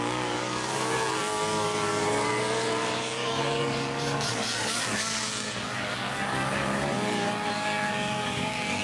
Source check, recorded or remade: remade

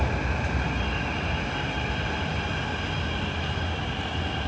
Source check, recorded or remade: recorded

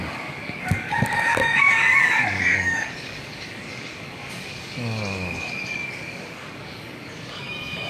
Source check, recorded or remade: remade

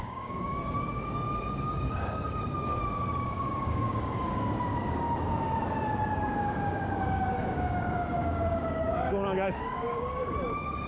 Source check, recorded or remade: remade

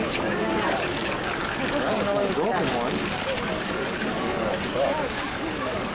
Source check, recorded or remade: remade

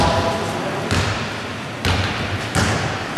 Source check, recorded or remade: recorded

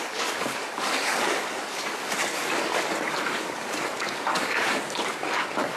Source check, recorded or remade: remade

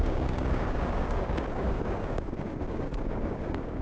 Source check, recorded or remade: remade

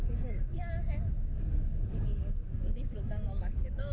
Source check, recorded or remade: remade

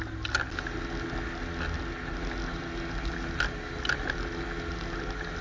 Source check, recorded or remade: recorded